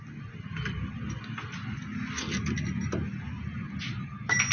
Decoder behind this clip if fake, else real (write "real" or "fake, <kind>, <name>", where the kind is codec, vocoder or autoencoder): real